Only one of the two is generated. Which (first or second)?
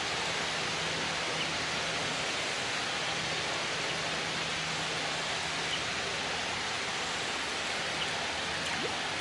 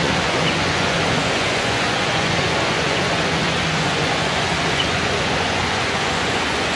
second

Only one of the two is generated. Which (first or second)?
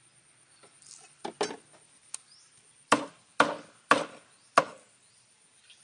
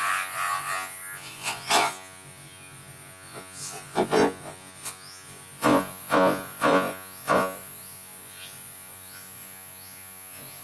second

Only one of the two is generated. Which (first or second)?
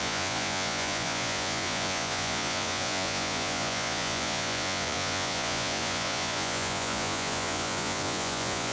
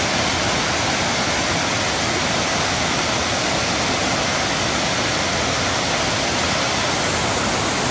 first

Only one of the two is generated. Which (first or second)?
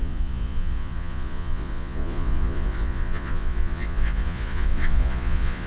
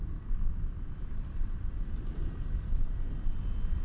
first